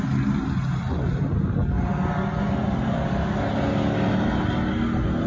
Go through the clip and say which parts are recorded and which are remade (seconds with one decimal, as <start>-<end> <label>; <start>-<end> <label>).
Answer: 0.0-5.3 recorded